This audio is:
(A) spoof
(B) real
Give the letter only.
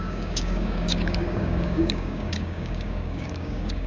A